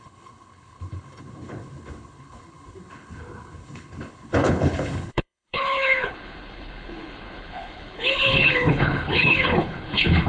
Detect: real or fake fake